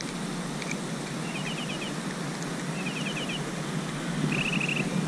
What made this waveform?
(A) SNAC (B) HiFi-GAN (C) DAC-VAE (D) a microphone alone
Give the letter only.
D